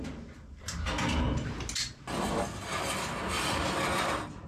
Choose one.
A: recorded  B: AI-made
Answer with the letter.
A